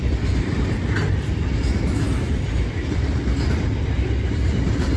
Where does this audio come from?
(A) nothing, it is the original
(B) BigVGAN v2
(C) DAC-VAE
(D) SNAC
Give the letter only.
B